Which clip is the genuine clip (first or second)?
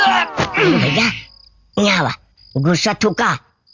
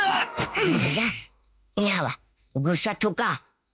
first